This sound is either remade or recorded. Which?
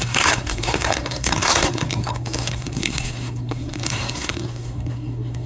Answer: remade